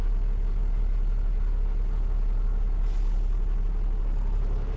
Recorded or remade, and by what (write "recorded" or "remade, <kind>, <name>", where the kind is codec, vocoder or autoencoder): recorded